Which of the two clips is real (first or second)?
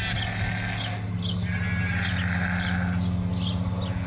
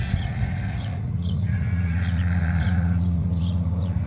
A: first